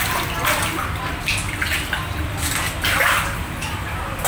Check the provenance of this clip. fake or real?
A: real